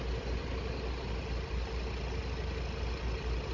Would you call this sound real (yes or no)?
yes